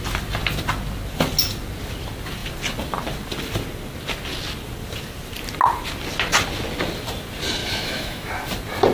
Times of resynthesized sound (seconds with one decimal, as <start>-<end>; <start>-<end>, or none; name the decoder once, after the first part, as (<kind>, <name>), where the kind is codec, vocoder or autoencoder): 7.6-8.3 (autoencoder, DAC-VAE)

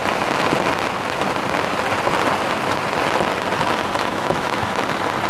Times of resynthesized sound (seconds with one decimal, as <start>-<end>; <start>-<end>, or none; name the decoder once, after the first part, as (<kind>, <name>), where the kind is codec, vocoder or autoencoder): 4.1-4.8 (autoencoder, DAC-VAE)

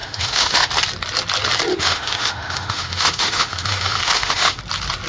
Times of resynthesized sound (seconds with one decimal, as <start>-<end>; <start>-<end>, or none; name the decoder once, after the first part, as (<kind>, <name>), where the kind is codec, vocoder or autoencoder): 0.0-0.7 (autoencoder, DAC-VAE); 1.7-4.6